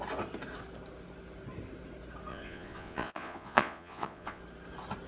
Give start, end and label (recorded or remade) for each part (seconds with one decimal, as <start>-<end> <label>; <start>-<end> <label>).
0.0-2.3 recorded; 2.3-4.4 remade; 4.4-5.1 recorded

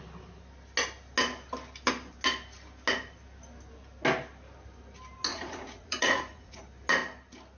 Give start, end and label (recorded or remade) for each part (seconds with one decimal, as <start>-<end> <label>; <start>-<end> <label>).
0.0-5.3 recorded; 5.3-6.6 remade; 6.6-7.6 recorded

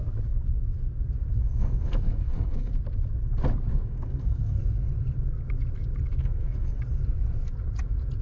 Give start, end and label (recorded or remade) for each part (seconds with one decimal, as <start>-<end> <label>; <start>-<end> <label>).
0.0-1.4 recorded; 1.4-2.7 remade; 2.7-3.7 recorded; 3.7-4.6 remade; 4.6-6.2 recorded; 6.2-6.8 remade; 6.8-8.2 recorded

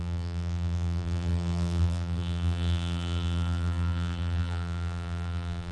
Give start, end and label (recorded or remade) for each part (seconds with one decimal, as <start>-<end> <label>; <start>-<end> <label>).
0.0-5.7 remade

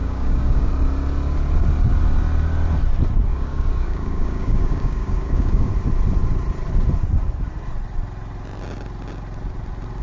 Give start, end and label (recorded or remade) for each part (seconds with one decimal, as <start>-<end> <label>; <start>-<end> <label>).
0.0-0.7 remade; 0.7-3.3 recorded; 3.3-5.7 remade; 5.7-10.0 recorded